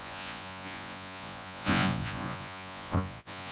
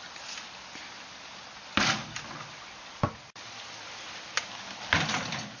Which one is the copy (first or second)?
first